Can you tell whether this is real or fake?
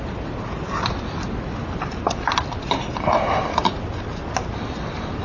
real